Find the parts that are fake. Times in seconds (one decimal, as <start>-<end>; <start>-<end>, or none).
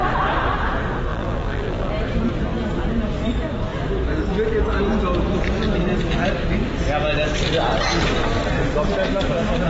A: 1.1-1.9